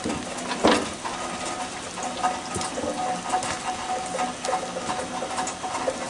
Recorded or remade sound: recorded